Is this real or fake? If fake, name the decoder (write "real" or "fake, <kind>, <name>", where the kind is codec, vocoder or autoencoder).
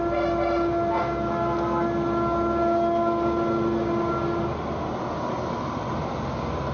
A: real